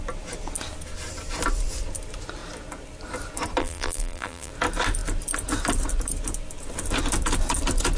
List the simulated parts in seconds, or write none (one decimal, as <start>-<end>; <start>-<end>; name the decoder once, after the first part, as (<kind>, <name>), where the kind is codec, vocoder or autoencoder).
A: 3.6-4.5 (vocoder, BigVGAN v2)